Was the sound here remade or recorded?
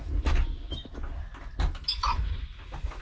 recorded